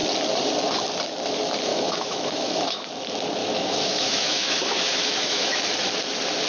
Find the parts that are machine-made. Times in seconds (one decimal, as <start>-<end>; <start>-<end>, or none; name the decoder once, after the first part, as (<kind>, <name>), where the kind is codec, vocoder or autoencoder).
1.7-2.9 (autoencoder, DAC-VAE); 3.4-5.7